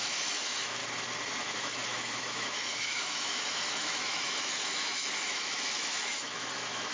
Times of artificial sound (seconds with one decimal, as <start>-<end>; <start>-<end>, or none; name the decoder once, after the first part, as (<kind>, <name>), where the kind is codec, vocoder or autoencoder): 0.0-0.8 (autoencoder, DAC-VAE); 1.4-6.9

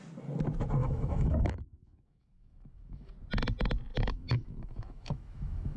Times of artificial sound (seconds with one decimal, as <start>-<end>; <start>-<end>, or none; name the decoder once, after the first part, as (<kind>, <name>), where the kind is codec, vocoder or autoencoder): 0.8-3.1 (autoencoder, DAC-VAE); 3.9-5.8

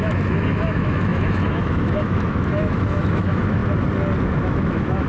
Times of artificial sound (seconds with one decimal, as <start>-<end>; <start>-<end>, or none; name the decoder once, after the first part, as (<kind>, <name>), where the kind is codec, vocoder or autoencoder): 0.0-3.6 (autoencoder, DAC-VAE); 4.4-5.1

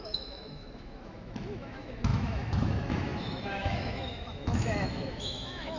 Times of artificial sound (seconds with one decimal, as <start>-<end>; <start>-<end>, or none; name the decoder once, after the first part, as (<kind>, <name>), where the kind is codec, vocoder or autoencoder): 0.0-5.8 (autoencoder, DAC-VAE)

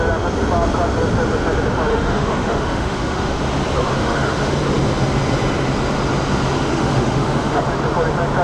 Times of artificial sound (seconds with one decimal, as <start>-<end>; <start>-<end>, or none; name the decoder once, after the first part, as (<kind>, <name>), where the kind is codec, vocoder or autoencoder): 1.9-3.4 (autoencoder, DAC-VAE); 3.9-4.5; 6.7-7.6

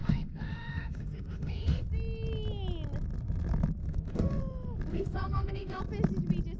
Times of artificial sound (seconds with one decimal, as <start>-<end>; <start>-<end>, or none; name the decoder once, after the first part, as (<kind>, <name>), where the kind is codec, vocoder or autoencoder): 0.0-1.9 (autoencoder, DAC-VAE); 3.8-4.4; 4.9-5.8